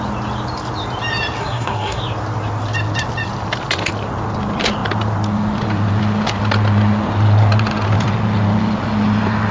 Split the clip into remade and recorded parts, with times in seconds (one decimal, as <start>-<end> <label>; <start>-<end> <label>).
0.0-1.4 recorded; 1.4-2.0 remade; 2.0-9.5 recorded